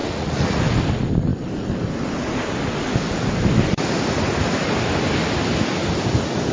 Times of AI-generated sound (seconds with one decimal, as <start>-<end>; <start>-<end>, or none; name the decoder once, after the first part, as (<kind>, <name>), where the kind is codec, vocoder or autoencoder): 0.0-0.6 (vocoder, Vocos)